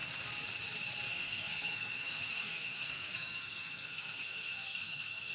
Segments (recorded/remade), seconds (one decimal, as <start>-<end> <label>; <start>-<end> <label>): 0.0-1.1 recorded; 1.1-5.3 remade